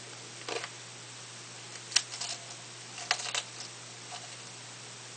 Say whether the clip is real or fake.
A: real